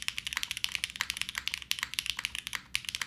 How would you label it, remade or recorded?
recorded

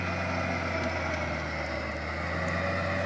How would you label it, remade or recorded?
recorded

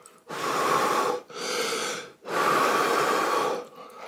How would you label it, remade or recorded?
recorded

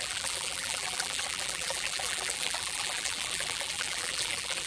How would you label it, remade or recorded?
remade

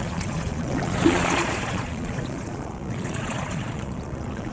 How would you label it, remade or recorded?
remade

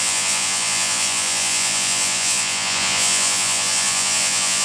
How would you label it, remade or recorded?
remade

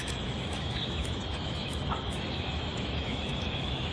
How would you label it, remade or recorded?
remade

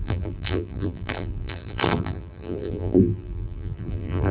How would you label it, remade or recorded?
remade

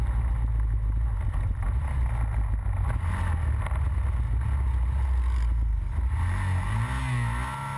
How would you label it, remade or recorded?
recorded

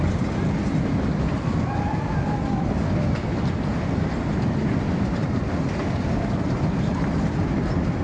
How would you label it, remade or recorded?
recorded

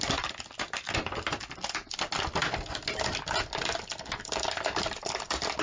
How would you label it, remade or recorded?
recorded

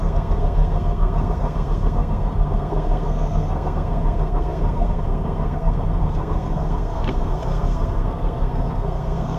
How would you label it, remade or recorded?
remade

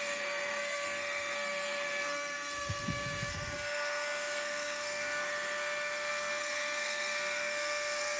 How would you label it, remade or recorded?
remade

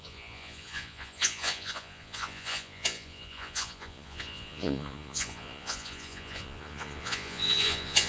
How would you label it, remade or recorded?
remade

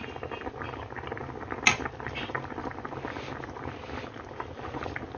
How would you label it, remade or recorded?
recorded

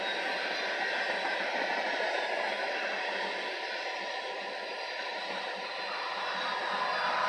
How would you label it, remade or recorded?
recorded